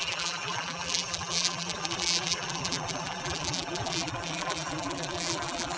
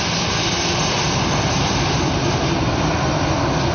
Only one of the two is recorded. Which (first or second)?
second